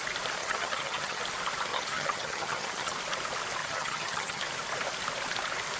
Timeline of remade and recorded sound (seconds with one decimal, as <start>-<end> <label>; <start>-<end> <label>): 0.0-0.4 recorded; 0.4-1.2 remade; 1.2-1.7 recorded; 1.7-2.9 remade; 2.9-3.6 recorded; 3.6-4.4 remade; 4.4-5.8 recorded